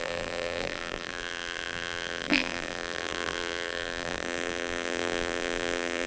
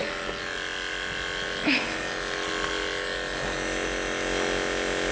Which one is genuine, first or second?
second